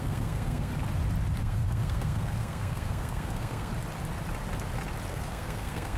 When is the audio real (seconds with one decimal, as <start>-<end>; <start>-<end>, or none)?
0.7-1.4; 3.7-5.1

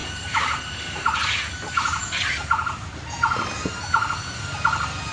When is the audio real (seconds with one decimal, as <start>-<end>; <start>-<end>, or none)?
0.0-5.1

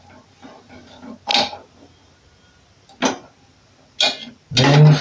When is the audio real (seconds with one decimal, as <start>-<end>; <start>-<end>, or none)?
0.0-5.0

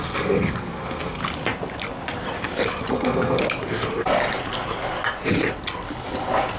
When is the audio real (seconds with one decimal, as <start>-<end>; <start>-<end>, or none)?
1.2-2.9; 3.4-6.6